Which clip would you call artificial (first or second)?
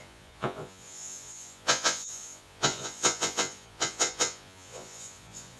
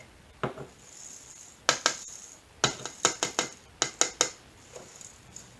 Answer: first